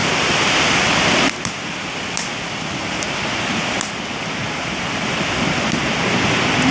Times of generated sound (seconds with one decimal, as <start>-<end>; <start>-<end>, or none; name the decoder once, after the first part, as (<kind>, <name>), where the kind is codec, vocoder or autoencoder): none